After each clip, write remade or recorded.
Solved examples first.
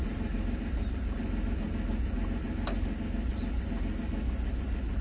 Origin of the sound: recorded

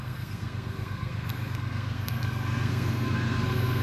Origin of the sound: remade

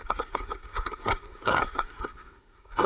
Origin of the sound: remade